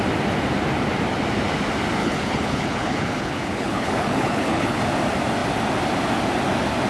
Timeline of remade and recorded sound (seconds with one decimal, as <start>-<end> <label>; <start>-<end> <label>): 0.0-2.0 recorded; 2.0-4.8 remade; 4.8-6.9 recorded